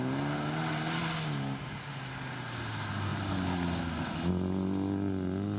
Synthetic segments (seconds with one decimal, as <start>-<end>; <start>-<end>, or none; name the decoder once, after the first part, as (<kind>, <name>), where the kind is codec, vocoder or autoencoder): none